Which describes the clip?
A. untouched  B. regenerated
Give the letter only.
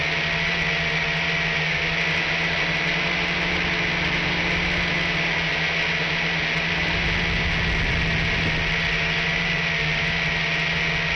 A